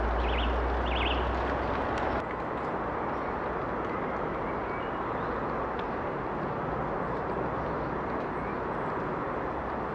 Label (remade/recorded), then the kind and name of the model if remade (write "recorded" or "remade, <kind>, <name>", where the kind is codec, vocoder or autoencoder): recorded